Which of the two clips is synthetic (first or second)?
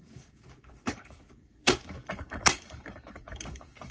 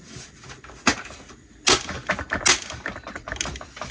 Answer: first